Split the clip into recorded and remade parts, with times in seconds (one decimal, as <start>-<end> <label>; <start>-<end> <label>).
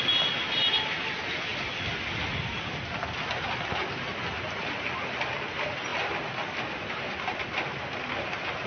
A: 0.0-8.7 recorded